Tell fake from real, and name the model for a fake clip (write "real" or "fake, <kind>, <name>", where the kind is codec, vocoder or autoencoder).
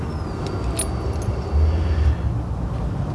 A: real